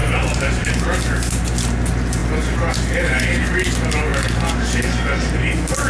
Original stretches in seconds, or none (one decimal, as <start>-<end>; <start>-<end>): 0.7-5.9